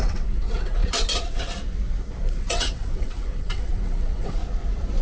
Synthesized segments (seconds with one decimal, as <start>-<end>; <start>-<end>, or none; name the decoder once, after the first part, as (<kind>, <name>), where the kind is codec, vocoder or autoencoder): 0.0-0.8 (vocoder, WaveNeXt); 2.3-4.4